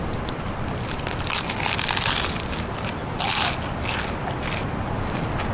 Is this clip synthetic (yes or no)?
no